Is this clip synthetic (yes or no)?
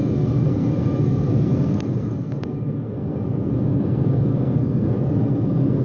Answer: yes